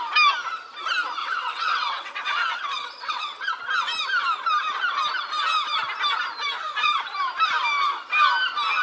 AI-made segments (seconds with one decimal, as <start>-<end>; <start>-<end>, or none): 1.2-3.5